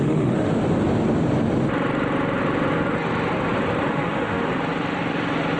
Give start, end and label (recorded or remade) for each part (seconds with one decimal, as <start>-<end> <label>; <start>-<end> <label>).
0.0-0.5 remade; 0.5-3.9 recorded; 3.9-4.5 remade; 4.5-5.6 recorded